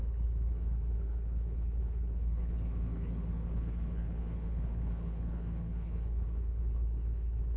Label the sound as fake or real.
fake